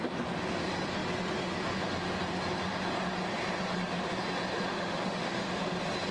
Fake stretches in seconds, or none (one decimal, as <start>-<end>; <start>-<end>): 4.7-5.5

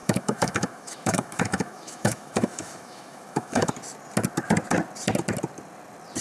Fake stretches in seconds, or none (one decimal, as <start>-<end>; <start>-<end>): 0.0-3.7

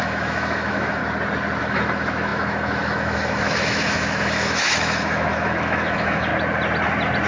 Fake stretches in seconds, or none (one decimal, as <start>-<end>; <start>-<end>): 0.0-1.0; 1.6-6.3

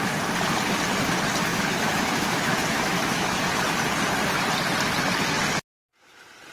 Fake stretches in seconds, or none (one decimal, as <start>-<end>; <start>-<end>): 1.5-3.6

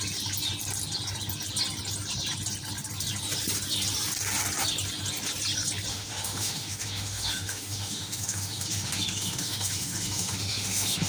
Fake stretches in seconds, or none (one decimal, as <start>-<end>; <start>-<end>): 5.9-11.1

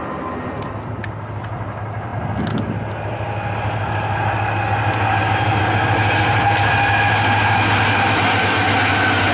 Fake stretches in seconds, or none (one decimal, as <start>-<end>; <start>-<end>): none

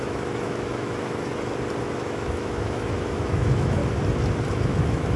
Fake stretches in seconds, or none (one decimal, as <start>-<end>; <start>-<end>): 0.0-1.3; 1.8-3.8; 4.5-5.2

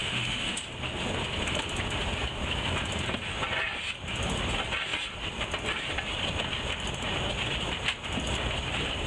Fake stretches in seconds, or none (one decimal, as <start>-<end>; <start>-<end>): 0.0-0.6